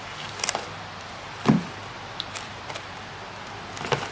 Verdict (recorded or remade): recorded